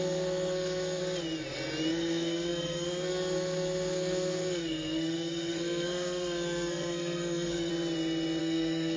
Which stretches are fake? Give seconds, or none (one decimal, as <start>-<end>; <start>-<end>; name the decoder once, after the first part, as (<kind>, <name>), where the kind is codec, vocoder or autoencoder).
0.0-1.0 (codec, SNAC); 1.9-7.7; 8.4-9.0